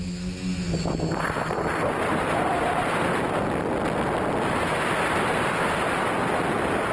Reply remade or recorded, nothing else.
recorded